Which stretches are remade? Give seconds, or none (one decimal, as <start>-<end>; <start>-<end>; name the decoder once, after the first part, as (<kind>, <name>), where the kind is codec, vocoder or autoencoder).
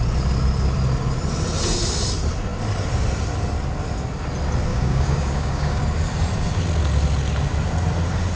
4.7-5.8 (codec, DAC)